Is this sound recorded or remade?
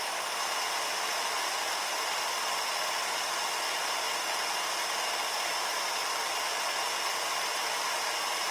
remade